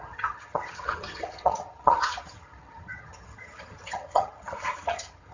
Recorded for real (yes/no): no